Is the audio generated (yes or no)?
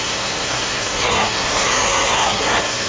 yes